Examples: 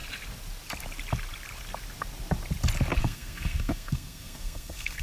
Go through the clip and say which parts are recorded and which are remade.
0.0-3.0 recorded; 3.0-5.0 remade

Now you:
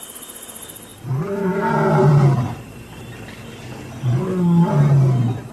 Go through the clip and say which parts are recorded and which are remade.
0.0-5.5 recorded

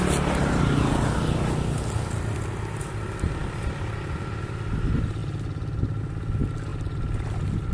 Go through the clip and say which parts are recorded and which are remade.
0.0-7.7 recorded

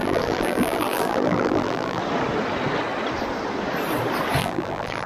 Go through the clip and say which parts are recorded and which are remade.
0.0-2.0 remade; 2.0-4.4 recorded; 4.4-5.1 remade

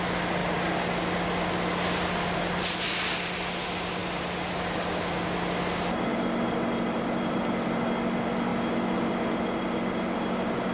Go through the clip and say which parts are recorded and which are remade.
0.0-10.7 recorded